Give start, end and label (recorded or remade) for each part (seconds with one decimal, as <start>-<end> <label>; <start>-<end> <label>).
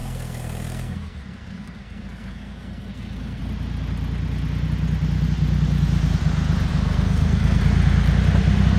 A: 0.0-3.4 remade; 3.4-6.7 recorded; 6.7-7.6 remade; 7.6-8.8 recorded